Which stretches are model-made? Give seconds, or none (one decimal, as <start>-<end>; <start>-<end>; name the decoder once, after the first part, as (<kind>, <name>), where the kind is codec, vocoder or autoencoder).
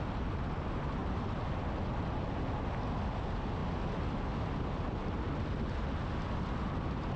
none